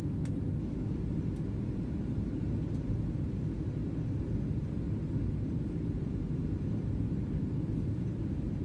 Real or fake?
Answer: real